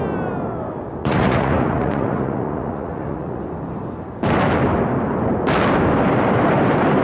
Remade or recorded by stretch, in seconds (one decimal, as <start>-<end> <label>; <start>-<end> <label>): 0.0-1.0 recorded; 1.0-3.4 remade; 3.4-7.0 recorded

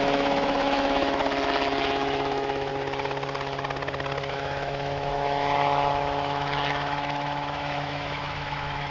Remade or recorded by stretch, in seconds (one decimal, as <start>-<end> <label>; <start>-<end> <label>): 0.0-1.2 remade; 1.2-1.7 recorded; 1.7-2.7 remade; 2.7-4.3 recorded; 4.3-8.9 remade

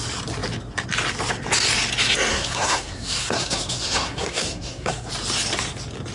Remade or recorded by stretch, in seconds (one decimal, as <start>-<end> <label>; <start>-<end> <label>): 0.0-2.3 recorded; 2.3-5.1 remade; 5.1-6.1 recorded

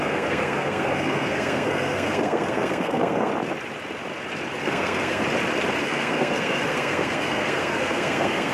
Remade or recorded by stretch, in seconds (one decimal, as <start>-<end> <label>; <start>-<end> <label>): 0.0-3.3 remade; 3.3-4.6 recorded; 4.6-5.2 remade; 5.2-5.8 recorded; 5.8-8.5 remade

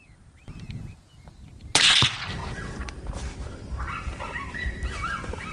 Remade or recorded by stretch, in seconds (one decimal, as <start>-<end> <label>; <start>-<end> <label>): 0.0-5.5 recorded

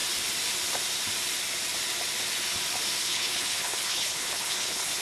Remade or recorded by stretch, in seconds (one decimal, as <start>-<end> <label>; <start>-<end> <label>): 0.0-3.0 recorded; 3.0-5.0 remade

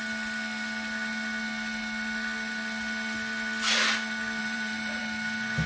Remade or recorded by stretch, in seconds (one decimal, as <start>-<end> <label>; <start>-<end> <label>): 0.0-4.4 recorded; 4.4-5.0 remade; 5.0-5.7 recorded

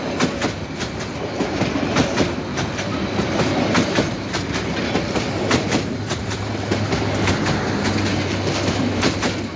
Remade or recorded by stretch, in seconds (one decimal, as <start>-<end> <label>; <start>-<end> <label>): 0.0-2.5 recorded; 2.5-7.3 remade; 7.3-8.1 recorded; 8.1-9.2 remade; 9.2-9.6 recorded